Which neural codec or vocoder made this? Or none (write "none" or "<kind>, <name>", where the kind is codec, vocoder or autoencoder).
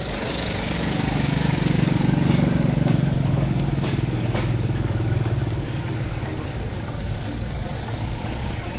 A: codec, DAC